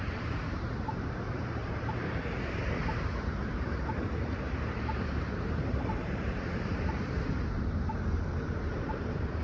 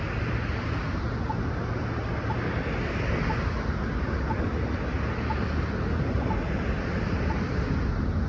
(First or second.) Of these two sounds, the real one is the second